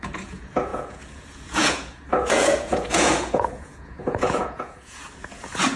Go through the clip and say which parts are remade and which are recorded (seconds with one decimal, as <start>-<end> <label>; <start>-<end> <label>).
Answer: 0.0-5.8 remade